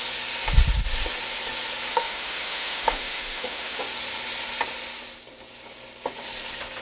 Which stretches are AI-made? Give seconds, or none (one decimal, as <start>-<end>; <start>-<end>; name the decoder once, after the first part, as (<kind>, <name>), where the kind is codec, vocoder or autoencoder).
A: 1.9-3.8 (autoencoder, DAC-VAE)